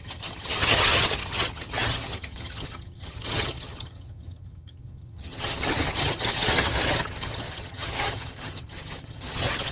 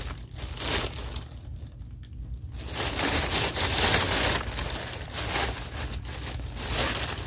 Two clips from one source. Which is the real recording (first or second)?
second